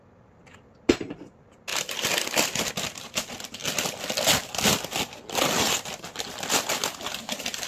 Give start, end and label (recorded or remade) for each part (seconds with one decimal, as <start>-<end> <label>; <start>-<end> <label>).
0.0-7.7 recorded